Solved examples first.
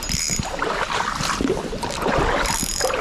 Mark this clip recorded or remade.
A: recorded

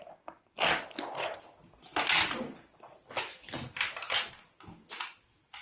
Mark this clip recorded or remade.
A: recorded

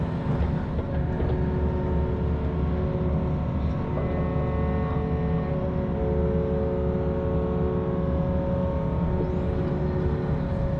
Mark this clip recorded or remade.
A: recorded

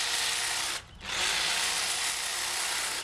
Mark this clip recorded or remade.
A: recorded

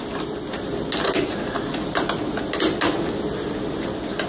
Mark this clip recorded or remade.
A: recorded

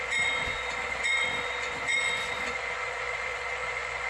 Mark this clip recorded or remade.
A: remade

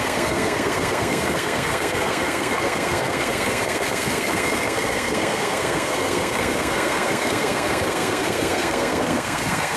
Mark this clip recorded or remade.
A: remade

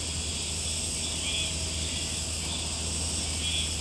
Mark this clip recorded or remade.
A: recorded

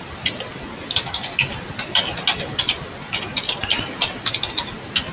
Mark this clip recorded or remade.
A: recorded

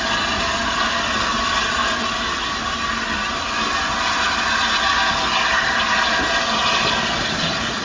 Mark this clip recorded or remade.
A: recorded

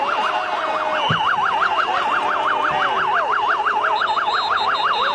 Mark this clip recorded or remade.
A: recorded